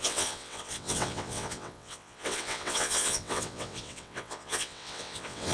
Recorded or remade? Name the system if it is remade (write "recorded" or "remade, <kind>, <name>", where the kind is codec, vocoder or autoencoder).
remade, vocoder, WaveNeXt